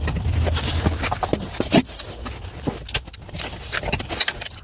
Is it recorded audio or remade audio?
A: recorded